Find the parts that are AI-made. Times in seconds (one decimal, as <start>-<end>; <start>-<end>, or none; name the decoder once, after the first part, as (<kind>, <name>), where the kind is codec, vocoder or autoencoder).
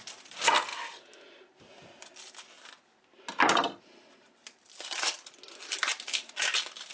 none